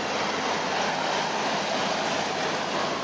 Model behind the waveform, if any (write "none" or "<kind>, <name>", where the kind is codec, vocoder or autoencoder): none